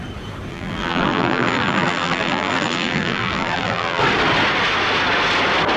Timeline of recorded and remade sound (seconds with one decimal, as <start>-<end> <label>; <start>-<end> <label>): 0.0-0.5 recorded; 0.5-4.0 remade; 4.0-5.8 recorded